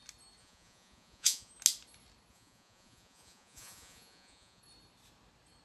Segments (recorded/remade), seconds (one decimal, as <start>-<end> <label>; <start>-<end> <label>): 0.0-0.4 recorded; 0.4-1.5 remade; 1.5-2.3 recorded; 2.3-4.6 remade; 4.6-5.6 recorded